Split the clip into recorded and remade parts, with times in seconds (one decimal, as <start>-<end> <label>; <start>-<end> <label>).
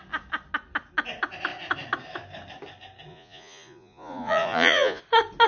0.0-3.1 recorded; 3.1-5.0 remade; 5.0-5.5 recorded